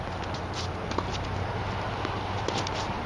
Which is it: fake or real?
real